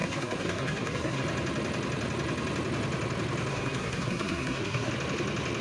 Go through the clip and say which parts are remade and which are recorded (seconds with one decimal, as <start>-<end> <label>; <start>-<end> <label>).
0.0-1.2 remade; 1.2-3.5 recorded; 3.5-4.9 remade; 4.9-5.6 recorded